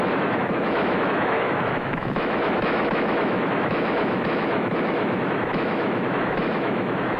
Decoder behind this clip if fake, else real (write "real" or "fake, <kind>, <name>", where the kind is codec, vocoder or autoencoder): fake, autoencoder, DAC-VAE